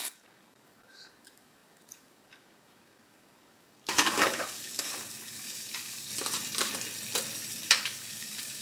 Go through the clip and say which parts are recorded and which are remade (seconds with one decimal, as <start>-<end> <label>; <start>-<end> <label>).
0.0-6.1 remade; 6.1-7.7 recorded; 7.7-8.6 remade